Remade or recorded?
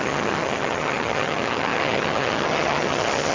remade